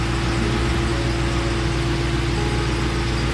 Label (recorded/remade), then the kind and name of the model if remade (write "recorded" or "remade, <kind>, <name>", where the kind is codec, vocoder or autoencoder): recorded